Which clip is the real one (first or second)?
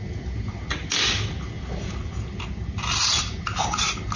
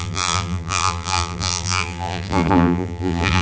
first